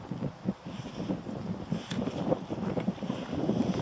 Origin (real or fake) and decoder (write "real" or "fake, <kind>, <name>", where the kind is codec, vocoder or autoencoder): real